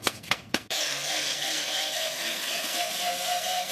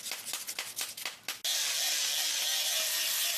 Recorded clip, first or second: second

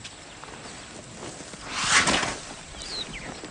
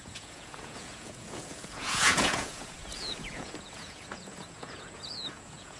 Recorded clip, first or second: first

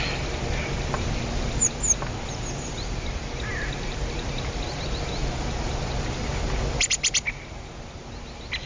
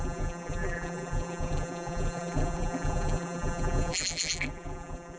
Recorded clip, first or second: first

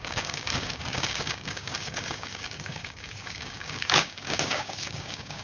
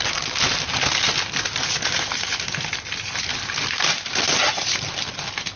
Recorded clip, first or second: second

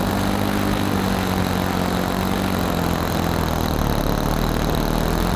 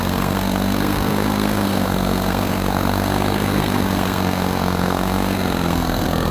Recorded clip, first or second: first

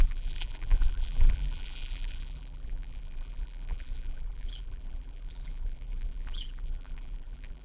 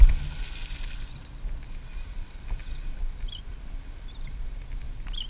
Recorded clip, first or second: second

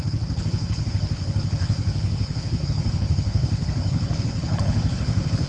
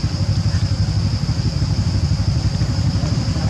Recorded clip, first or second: second